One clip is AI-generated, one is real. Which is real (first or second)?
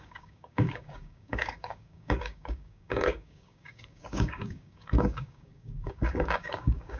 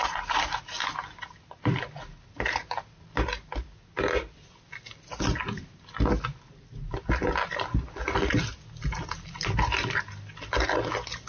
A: second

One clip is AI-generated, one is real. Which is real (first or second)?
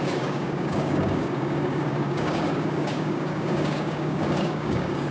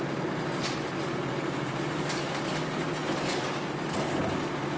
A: second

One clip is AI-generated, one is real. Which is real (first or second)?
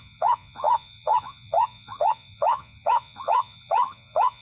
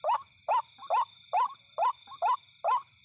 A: second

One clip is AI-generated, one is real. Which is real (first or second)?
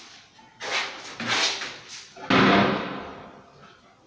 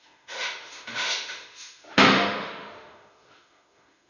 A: first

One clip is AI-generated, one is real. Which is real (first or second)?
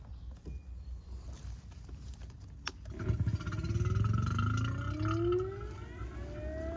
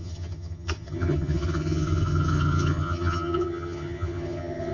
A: first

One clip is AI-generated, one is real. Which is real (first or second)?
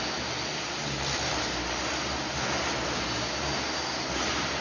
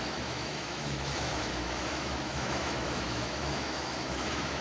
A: first